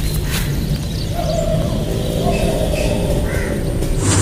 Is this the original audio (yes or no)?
yes